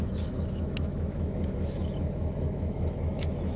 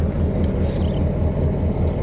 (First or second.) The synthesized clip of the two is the first